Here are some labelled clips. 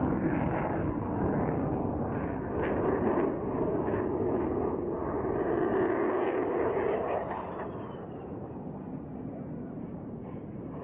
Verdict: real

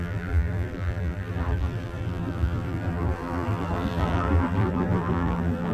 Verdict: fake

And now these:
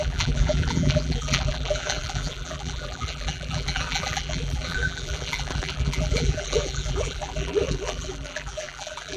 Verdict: fake